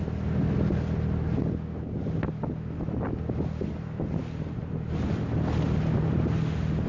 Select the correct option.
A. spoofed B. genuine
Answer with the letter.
B